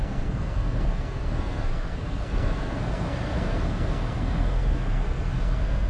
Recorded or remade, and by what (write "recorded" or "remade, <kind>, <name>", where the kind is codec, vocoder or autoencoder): remade, codec, SNAC